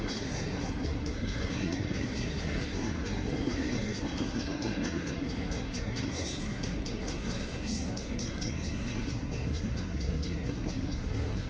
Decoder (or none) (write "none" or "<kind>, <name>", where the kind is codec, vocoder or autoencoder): codec, SNAC